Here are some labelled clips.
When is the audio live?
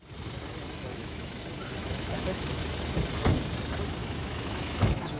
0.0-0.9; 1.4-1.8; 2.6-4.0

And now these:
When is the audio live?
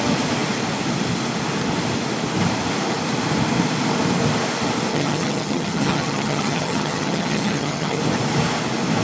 0.0-4.9; 8.0-9.0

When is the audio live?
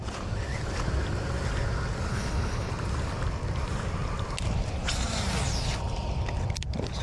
0.0-2.1; 2.7-7.0